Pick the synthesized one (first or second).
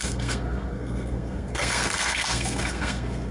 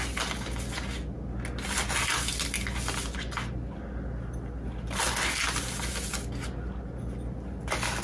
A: first